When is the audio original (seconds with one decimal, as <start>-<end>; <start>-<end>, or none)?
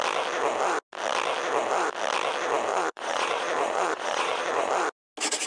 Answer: 0.0-2.7; 4.7-5.5